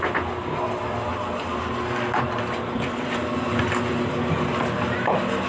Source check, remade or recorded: recorded